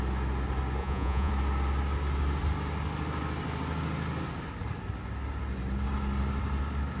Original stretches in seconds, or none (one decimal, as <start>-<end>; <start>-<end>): 0.0-0.8; 1.3-7.0